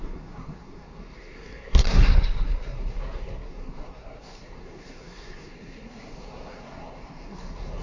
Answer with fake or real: fake